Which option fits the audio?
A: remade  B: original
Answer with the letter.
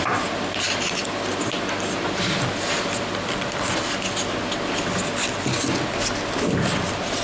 B